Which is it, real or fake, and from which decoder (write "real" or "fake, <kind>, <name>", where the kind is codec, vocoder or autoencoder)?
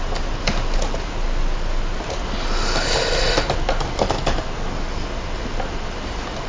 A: real